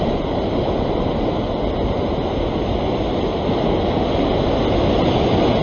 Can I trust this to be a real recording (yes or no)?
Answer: yes